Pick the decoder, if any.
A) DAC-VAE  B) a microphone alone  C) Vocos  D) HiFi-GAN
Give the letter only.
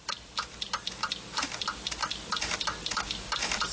B